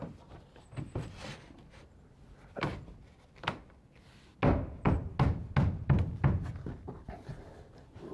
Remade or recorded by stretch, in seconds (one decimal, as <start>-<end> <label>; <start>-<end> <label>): 0.0-8.1 recorded